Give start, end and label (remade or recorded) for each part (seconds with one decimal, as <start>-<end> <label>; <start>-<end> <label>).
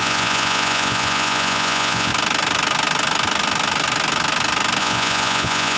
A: 0.0-2.1 remade; 2.1-4.8 recorded; 4.8-5.8 remade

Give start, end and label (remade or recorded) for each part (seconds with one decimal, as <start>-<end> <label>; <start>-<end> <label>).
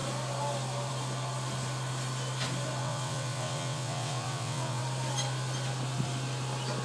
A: 0.0-2.8 recorded; 2.8-4.8 remade; 4.8-6.8 recorded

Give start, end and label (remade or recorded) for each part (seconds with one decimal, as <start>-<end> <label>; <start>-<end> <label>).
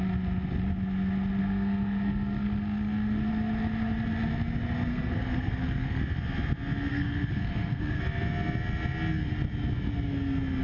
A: 0.0-1.4 recorded; 1.4-3.3 remade; 3.3-4.9 recorded; 4.9-6.0 remade; 6.0-6.9 recorded; 6.9-8.0 remade; 8.0-10.6 recorded